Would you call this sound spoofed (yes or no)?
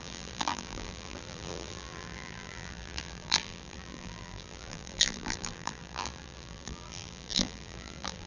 yes